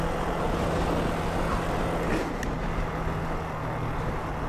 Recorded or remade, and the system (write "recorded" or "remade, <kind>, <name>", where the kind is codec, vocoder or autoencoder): recorded